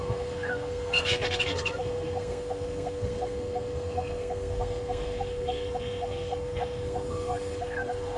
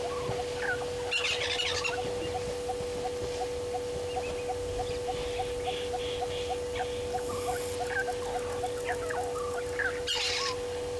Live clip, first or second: second